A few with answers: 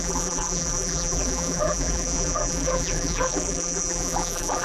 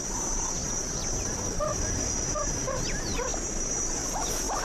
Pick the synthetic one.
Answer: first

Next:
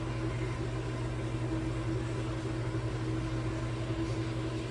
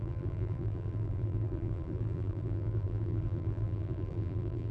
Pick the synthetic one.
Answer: second